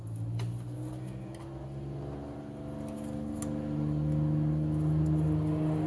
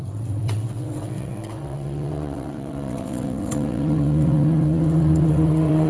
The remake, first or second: second